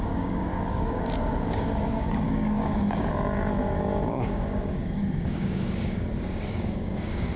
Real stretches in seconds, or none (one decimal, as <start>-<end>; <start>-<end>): 3.1-3.6